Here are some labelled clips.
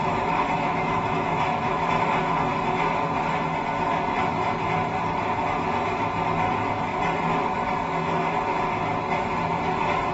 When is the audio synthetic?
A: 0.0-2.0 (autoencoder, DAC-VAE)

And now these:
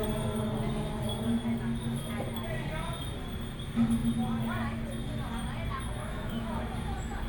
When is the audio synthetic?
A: 6.0-6.6 (autoencoder, DAC-VAE)

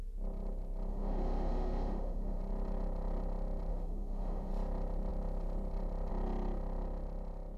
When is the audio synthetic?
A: 0.9-2.4 (autoencoder, DAC-VAE); 3.7-4.5

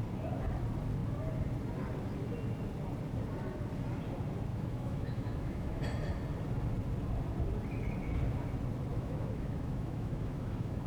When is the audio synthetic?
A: 4.5-5.8 (autoencoder, DAC-VAE); 8.9-10.9

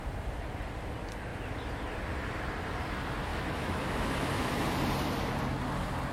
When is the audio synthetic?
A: 3.3-4.7 (autoencoder, DAC-VAE)

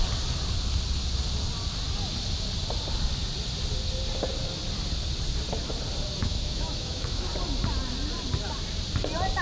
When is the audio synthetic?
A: 6.1-7.3 (autoencoder, DAC-VAE)